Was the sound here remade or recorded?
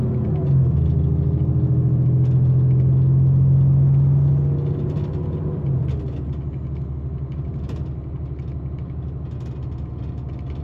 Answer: recorded